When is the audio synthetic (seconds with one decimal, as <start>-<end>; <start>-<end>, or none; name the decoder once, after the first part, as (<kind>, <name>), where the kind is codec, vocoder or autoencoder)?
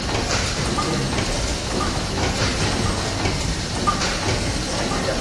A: 1.5-2.3 (autoencoder, DAC-VAE)